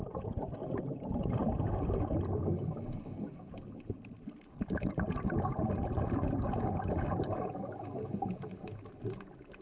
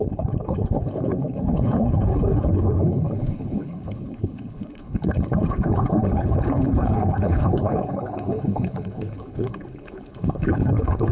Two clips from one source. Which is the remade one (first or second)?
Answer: second